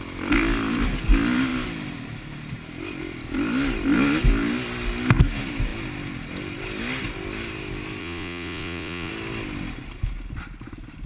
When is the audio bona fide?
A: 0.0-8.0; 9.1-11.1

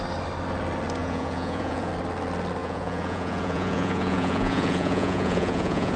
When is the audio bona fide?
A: 0.0-1.0; 1.9-2.6

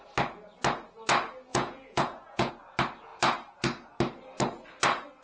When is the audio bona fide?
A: 0.0-1.5; 2.5-5.2

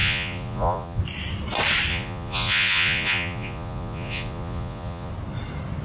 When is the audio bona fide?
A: 1.0-1.9; 5.1-5.8

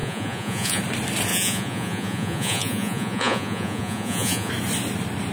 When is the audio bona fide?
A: 0.8-1.3; 4.5-5.3

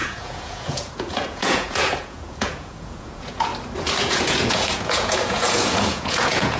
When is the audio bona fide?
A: 3.5-4.0

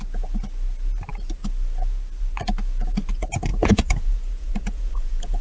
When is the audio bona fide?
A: 0.0-3.5

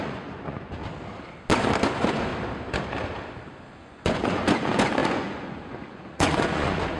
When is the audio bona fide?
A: 0.8-1.8; 2.3-3.7